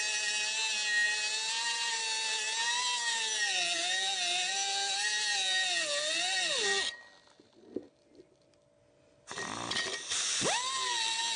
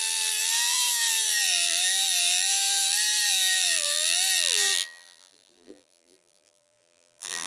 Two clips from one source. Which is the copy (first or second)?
second